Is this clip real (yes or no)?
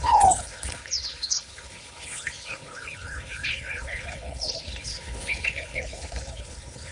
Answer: no